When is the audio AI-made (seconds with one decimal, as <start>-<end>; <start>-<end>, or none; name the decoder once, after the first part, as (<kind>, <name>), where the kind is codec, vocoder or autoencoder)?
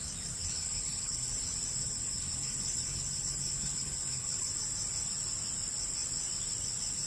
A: 0.4-1.4 (codec, HILCodec); 1.8-4.5